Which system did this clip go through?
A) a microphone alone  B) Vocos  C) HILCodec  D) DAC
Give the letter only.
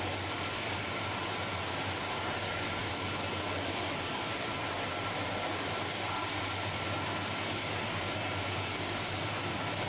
A